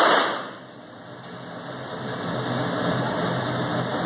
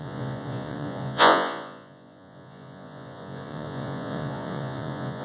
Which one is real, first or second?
first